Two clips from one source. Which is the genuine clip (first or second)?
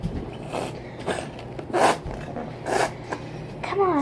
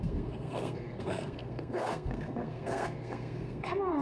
first